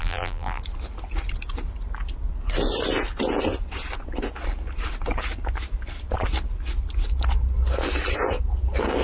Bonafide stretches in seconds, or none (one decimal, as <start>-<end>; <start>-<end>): 0.6-9.0